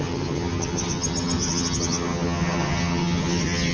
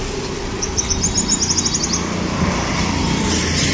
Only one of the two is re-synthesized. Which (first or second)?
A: first